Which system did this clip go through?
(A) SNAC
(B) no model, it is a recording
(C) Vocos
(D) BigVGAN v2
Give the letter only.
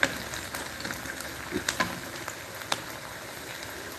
B